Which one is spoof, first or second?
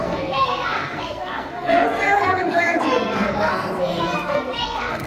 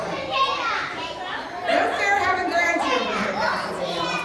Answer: first